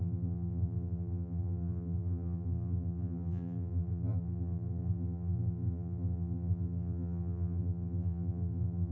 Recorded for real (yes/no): no